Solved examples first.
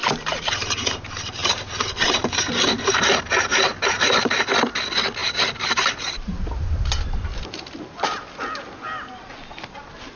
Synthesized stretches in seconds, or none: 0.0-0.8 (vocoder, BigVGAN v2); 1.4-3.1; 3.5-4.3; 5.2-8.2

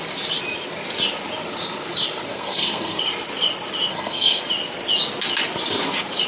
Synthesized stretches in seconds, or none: 2.3-3.0 (codec, SNAC); 3.9-4.4

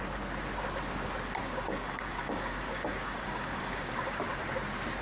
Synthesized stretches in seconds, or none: 1.4-4.4 (codec, DAC)